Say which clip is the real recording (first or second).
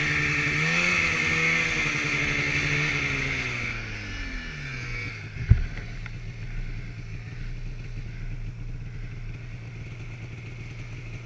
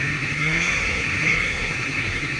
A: first